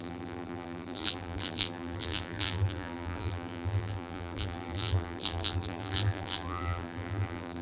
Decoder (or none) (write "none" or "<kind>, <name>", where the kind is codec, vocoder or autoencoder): vocoder, BigVGAN v2